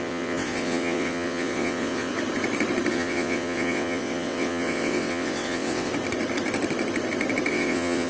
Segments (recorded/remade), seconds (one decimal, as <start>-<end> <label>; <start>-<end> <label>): 0.0-2.1 remade; 2.1-2.9 recorded; 2.9-5.9 remade; 5.9-7.5 recorded; 7.5-8.1 remade